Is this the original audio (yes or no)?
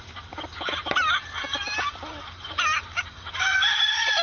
yes